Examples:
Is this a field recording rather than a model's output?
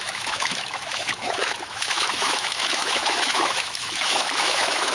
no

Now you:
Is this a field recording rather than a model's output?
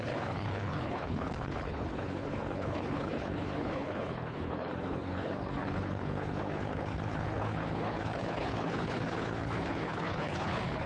no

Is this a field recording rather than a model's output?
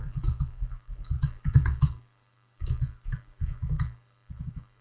no